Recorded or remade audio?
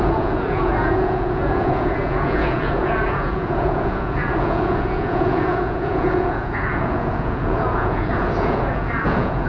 remade